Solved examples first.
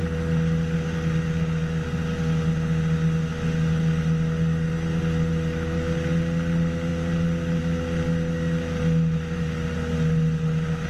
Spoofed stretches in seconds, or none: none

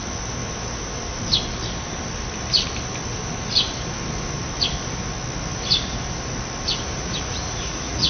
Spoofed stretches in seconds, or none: 7.0-8.1 (vocoder, Vocos)